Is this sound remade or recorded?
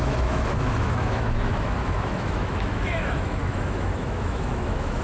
remade